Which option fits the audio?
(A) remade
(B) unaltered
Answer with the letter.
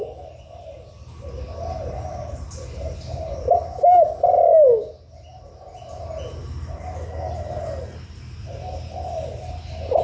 B